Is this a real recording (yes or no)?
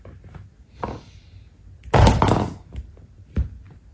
yes